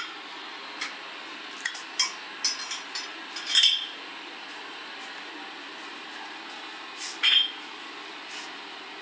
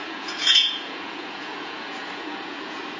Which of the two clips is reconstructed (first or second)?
second